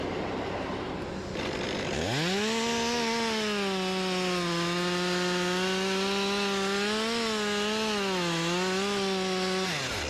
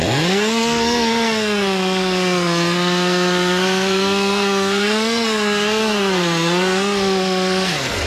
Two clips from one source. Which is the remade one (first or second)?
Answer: second